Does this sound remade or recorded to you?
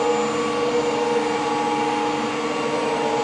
recorded